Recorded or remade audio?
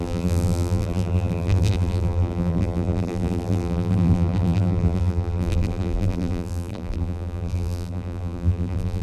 remade